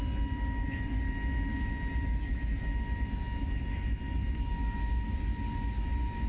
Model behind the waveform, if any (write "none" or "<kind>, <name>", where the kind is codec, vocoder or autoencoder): none